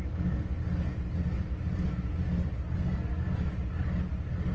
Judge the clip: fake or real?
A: real